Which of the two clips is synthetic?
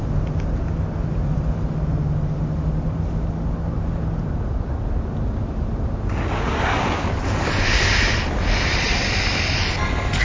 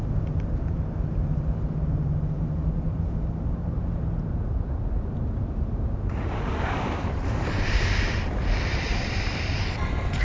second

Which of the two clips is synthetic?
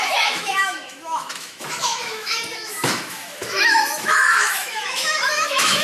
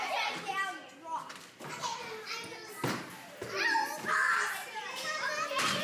first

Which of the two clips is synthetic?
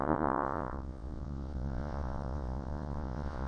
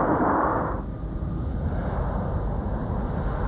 first